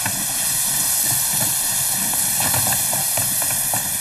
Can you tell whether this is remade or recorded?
recorded